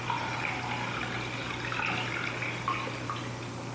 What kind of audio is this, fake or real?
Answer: real